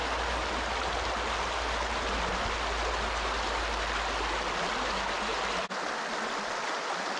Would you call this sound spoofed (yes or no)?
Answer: no